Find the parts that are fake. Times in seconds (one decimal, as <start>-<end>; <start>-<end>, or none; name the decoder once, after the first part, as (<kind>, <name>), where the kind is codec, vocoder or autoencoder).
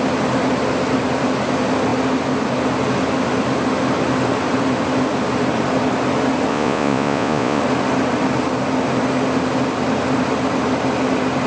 6.5-7.6 (vocoder, Vocos)